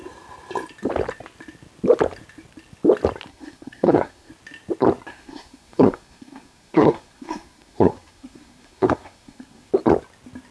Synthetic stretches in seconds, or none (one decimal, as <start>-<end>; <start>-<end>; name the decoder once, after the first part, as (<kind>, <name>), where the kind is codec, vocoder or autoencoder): 3.3-4.3 (codec, SNAC); 5.1-9.7